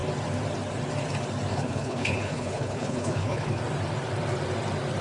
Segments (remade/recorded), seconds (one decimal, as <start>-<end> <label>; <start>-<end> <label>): 0.0-1.5 recorded; 1.5-3.6 remade; 3.6-5.0 recorded